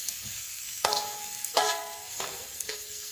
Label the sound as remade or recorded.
remade